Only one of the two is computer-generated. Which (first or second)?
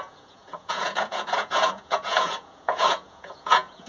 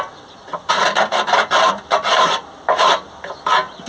first